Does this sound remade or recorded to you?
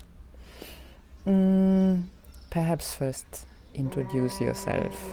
recorded